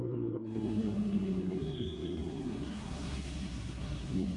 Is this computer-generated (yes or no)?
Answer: yes